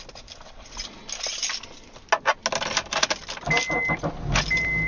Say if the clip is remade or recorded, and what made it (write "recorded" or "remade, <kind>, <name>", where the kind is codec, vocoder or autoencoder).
recorded